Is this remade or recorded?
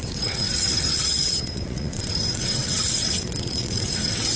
remade